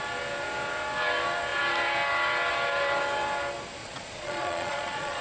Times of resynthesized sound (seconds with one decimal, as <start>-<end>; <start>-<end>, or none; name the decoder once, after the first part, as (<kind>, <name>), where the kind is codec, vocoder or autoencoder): 3.8-5.2 (vocoder, Vocos)